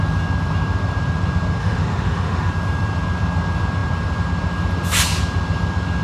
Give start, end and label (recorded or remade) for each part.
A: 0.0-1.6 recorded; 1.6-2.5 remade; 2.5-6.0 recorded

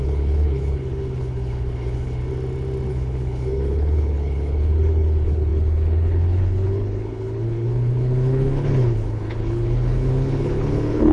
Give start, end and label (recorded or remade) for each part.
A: 0.0-2.2 remade; 2.2-2.9 recorded; 2.9-11.1 remade